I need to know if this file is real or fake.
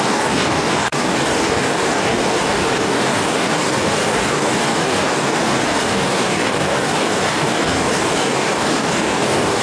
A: fake